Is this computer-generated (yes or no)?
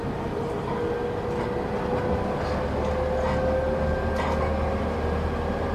no